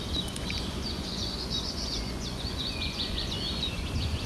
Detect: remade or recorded remade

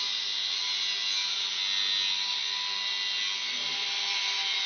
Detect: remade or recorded recorded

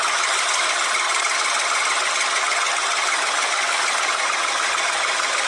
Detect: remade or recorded recorded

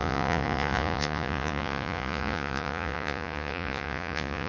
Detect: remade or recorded remade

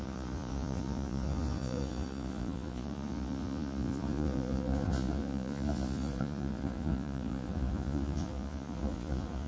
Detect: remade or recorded remade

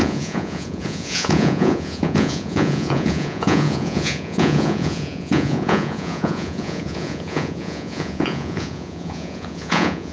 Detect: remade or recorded remade